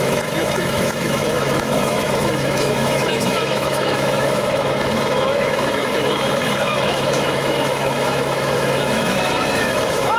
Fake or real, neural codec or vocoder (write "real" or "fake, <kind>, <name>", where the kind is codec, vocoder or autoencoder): fake, autoencoder, DAC-VAE